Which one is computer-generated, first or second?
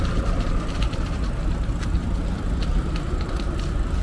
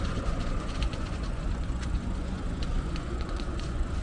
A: second